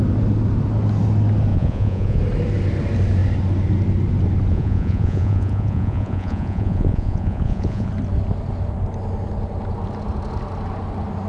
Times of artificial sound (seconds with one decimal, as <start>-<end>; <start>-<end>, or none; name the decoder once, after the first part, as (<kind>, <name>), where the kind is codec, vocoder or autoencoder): 1.5-2.2 (vocoder, Vocos); 4.5-7.9